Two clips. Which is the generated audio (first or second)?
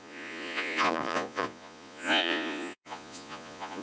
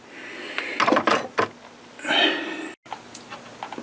first